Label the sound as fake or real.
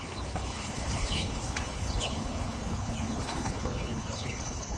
fake